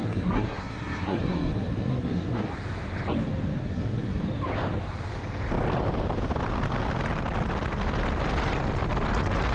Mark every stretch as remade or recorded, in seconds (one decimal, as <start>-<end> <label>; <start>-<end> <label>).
0.0-2.5 remade; 2.5-3.6 recorded; 3.6-4.2 remade; 4.2-9.5 recorded